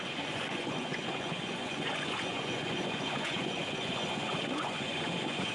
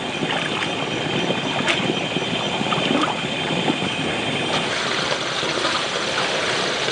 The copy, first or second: first